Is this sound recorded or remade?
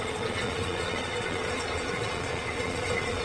remade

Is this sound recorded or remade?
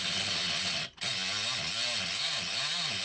recorded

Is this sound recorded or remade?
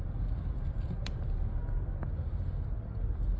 recorded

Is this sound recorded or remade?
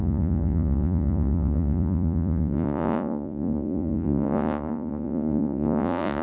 remade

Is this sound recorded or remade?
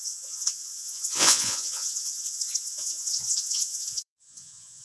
remade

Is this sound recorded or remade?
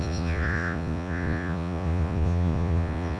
remade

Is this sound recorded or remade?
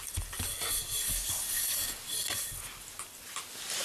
recorded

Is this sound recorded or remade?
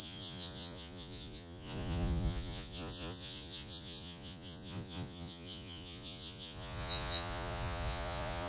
remade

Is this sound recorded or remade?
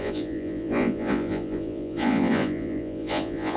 remade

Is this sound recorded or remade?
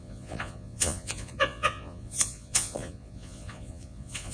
remade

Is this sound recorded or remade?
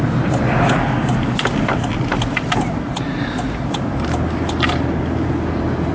recorded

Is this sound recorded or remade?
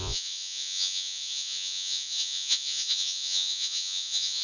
remade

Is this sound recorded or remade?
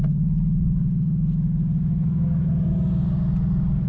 recorded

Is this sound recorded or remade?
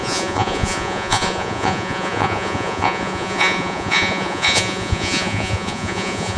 remade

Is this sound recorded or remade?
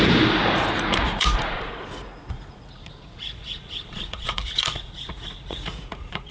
remade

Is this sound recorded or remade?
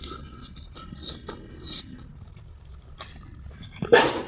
recorded